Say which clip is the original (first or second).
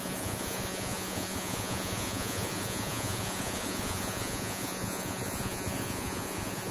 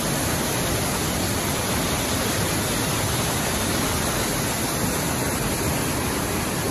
second